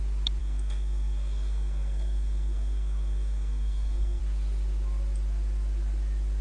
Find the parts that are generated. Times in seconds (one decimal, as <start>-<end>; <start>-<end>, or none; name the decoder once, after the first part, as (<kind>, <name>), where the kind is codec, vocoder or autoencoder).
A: 0.4-4.2 (codec, SNAC)